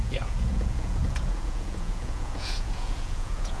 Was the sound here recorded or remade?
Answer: remade